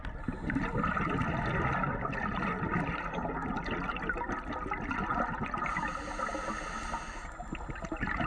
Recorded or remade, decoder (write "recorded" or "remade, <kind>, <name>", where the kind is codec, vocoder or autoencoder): recorded